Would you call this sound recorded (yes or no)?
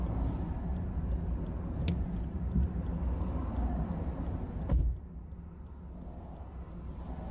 yes